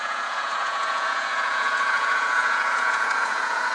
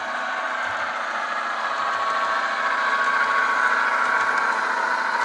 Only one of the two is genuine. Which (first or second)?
second